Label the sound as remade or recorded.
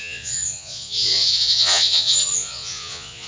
remade